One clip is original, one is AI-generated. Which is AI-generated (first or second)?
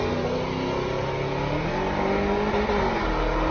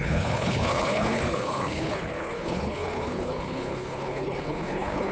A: second